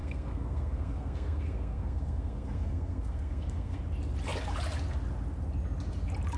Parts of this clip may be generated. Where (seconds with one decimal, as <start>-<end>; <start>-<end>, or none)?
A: 0.0-3.8